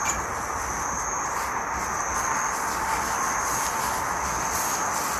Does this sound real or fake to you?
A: real